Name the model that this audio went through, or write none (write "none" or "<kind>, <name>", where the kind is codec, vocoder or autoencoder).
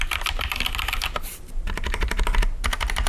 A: none